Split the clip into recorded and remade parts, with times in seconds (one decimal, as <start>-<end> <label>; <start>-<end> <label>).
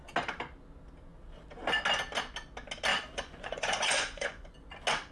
0.0-2.9 recorded; 2.9-4.5 remade; 4.5-5.1 recorded